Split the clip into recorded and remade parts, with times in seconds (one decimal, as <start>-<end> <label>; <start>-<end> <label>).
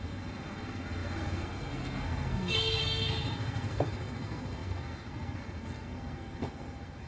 0.0-7.1 remade